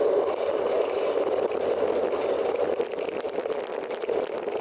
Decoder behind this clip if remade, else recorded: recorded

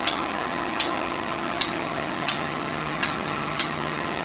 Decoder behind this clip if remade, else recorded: remade, vocoder, HiFi-GAN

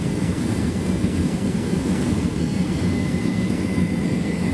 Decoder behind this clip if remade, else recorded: remade, codec, SNAC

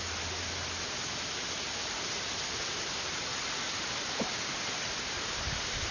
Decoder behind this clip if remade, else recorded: recorded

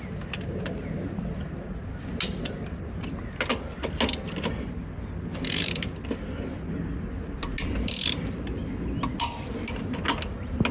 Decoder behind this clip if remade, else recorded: recorded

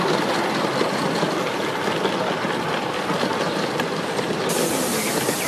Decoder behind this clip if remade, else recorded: recorded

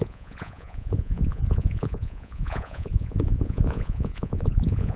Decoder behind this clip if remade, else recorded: remade, vocoder, Vocos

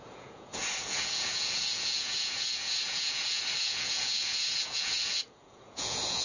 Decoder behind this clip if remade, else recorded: remade, vocoder, Vocos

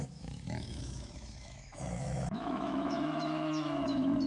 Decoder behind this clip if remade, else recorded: remade, autoencoder, DAC-VAE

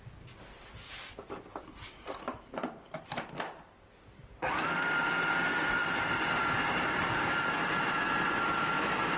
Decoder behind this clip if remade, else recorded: remade, vocoder, BigVGAN v2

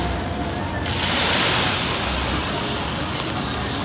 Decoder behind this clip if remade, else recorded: recorded